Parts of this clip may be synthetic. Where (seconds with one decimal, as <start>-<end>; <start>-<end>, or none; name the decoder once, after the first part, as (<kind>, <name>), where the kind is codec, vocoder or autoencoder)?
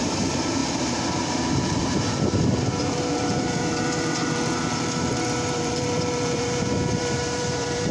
0.0-7.9 (vocoder, BigVGAN v2)